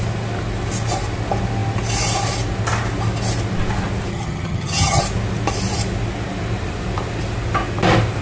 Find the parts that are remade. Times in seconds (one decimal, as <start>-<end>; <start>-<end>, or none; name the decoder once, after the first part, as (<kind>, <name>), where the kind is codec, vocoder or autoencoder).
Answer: 4.1-5.0 (vocoder, HiFi-GAN)